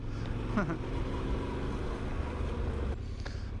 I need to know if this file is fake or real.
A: real